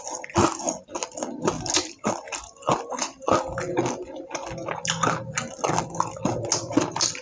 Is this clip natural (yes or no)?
yes